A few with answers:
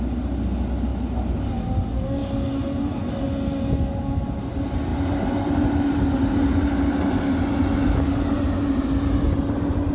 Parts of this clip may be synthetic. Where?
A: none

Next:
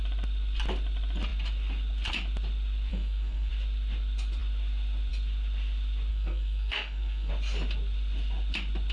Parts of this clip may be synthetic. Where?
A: 2.9-3.5 (codec, SNAC); 6.1-7.3